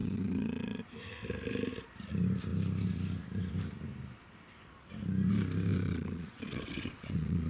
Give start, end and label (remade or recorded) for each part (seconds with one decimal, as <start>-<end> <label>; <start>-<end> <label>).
0.0-0.8 remade; 0.8-5.7 recorded; 5.7-7.5 remade